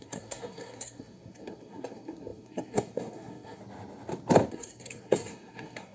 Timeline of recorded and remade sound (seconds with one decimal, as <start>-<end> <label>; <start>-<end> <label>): 0.0-3.6 remade; 3.6-4.5 recorded; 4.5-5.9 remade